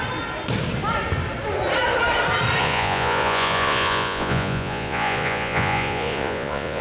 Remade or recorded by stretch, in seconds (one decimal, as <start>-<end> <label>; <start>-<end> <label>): 0.0-2.6 recorded; 2.6-6.8 remade